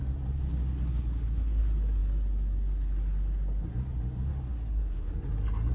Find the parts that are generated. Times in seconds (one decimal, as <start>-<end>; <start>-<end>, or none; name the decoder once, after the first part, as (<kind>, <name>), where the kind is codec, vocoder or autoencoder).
0.6-1.6 (codec, HILCodec); 4.3-5.3